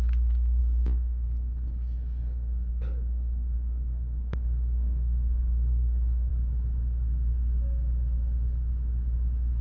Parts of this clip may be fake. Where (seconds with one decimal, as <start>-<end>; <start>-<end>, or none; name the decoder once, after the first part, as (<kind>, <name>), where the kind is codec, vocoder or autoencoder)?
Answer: 0.0-6.3 (codec, SNAC)